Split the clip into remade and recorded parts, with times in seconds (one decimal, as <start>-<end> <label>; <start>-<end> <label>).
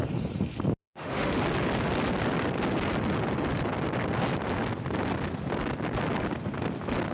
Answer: 0.0-0.8 recorded; 0.8-1.4 remade; 1.4-7.1 recorded